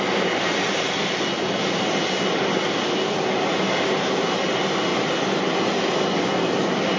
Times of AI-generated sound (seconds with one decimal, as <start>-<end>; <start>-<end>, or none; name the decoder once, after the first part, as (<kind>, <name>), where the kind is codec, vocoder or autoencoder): none